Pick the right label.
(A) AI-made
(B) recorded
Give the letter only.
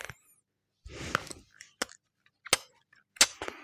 B